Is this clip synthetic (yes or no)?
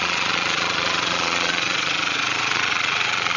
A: yes